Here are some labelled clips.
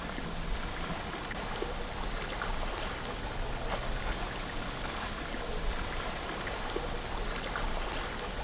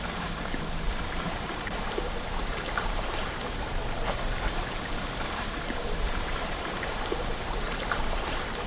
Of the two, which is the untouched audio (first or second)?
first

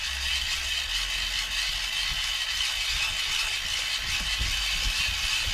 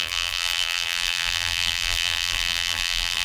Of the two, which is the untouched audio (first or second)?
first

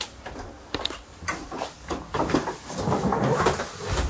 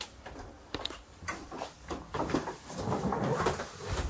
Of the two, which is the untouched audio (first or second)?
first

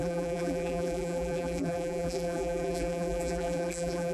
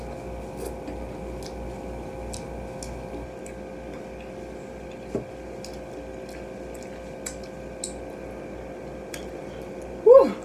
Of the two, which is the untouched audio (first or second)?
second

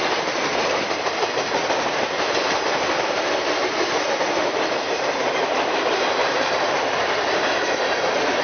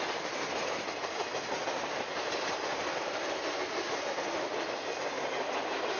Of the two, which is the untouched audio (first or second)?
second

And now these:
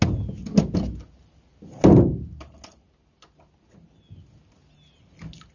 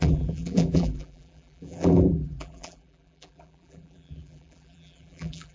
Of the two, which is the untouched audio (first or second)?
first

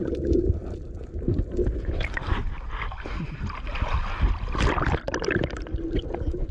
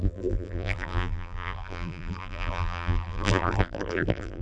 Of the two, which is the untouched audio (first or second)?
first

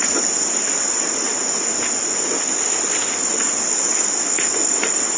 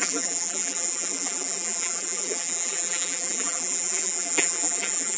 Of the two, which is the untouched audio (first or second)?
first